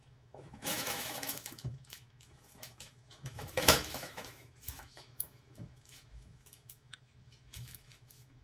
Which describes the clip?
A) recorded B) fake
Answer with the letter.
B